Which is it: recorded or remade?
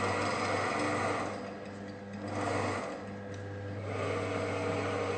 recorded